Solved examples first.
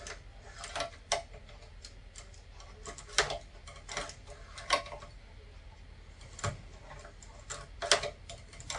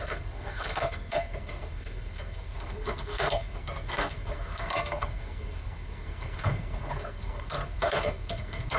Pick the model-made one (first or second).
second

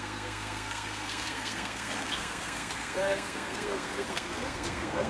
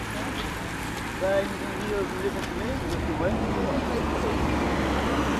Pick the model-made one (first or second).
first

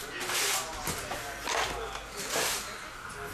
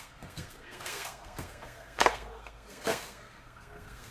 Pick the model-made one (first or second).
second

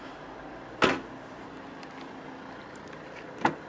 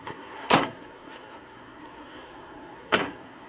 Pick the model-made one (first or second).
second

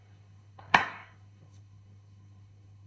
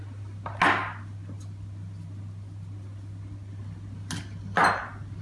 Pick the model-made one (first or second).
first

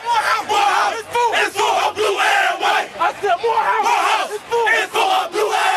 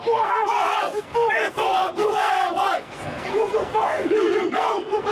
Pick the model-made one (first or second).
second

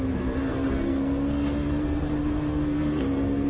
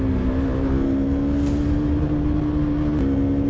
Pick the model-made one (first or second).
first